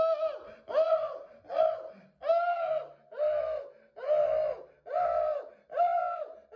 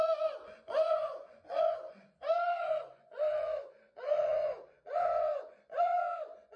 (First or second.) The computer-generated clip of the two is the second